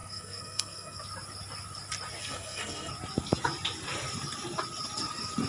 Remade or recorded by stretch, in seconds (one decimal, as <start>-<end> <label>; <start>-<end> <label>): 0.0-1.0 remade; 1.0-2.2 recorded; 2.2-2.9 remade; 2.9-5.5 recorded